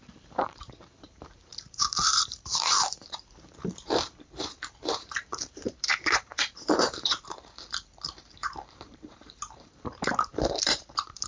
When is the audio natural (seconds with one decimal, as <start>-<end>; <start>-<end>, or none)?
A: none